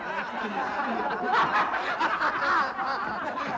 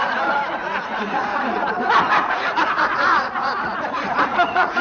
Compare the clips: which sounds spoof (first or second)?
second